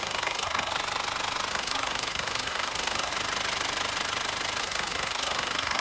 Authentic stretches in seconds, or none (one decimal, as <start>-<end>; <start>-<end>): 0.7-1.5; 3.1-4.6